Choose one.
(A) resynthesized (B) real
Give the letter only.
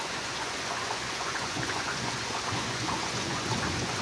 A